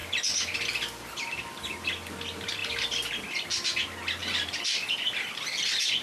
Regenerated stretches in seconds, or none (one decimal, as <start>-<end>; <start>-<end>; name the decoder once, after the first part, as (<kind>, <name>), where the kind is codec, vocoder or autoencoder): 0.0-1.9 (vocoder, BigVGAN v2); 2.6-3.1; 4.2-5.5